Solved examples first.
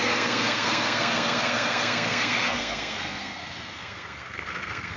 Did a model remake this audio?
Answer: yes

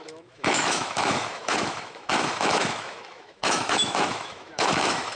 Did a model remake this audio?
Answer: yes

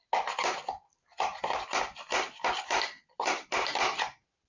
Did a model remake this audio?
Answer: no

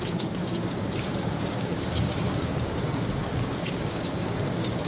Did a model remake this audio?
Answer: yes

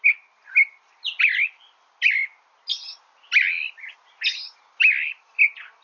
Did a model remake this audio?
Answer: no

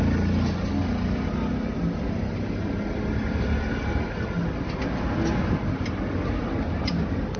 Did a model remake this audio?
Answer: no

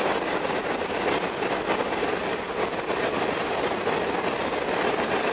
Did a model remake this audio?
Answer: no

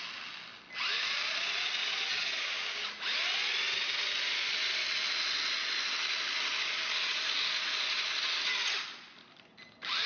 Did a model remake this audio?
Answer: no